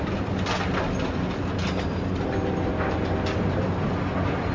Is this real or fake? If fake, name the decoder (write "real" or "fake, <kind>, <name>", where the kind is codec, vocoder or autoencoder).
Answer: real